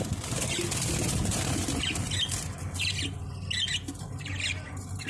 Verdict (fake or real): real